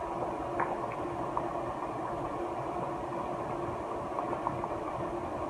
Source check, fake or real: real